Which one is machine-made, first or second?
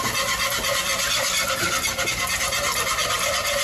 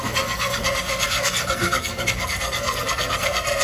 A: second